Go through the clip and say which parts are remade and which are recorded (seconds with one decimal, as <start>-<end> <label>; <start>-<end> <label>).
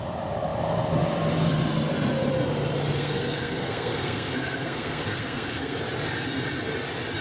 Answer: 0.0-3.0 recorded; 3.0-5.8 remade; 5.8-7.2 recorded